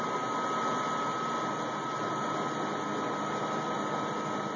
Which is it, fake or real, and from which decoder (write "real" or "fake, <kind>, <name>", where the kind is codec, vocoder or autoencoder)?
real